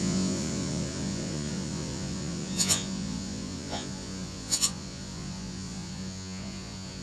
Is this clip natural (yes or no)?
no